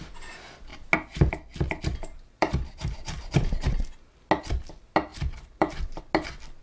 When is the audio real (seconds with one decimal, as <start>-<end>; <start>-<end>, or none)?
0.0-1.9; 3.8-5.1; 6.0-6.6